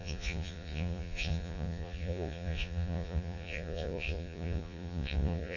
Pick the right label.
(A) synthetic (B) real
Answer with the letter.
A